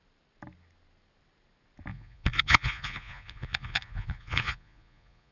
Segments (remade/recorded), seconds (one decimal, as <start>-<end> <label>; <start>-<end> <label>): 0.0-1.9 recorded; 1.9-5.3 remade